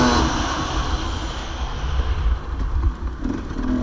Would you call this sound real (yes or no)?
yes